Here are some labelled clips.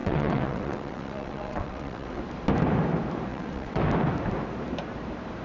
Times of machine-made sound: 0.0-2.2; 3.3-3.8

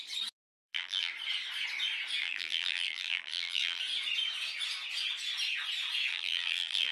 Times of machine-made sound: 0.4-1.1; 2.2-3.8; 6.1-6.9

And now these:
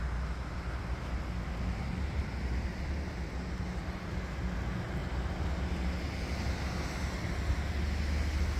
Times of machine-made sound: none